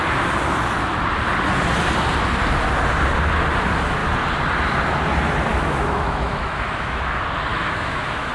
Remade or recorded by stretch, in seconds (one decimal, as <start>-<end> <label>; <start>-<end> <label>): 0.0-5.5 recorded; 5.5-7.0 remade; 7.0-7.5 recorded; 7.5-8.3 remade